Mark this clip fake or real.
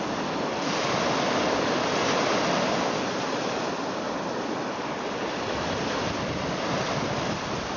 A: real